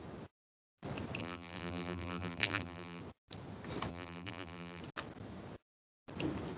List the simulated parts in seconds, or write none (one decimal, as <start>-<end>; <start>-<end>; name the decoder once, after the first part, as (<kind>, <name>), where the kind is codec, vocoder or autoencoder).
1.2-3.0 (vocoder, BigVGAN v2); 3.9-4.8